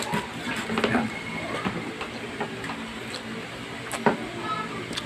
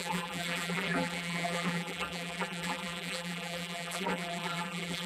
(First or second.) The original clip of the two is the first